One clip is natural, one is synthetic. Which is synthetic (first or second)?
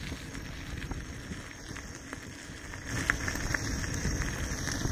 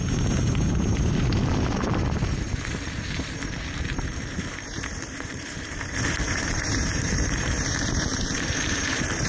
second